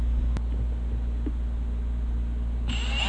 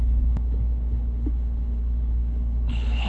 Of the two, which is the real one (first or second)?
first